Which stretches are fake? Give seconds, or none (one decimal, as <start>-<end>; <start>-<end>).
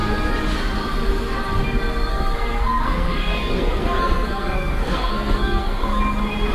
2.1-6.0